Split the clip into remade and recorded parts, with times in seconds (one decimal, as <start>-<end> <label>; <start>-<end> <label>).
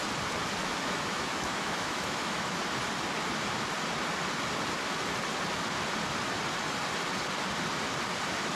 0.0-0.6 recorded; 0.6-2.5 remade; 2.5-8.6 recorded